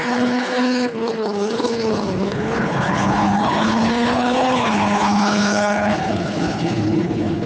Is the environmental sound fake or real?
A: fake